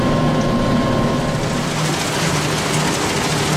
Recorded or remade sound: recorded